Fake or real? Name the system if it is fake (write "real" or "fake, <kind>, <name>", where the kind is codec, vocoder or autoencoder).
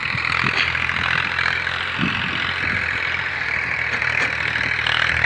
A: fake, vocoder, BigVGAN v2